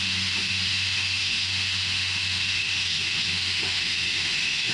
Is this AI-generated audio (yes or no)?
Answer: yes